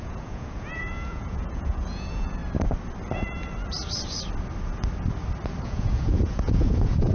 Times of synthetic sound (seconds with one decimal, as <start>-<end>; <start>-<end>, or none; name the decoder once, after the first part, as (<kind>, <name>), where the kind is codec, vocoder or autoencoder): 0.0-2.4 (vocoder, Vocos); 5.6-7.1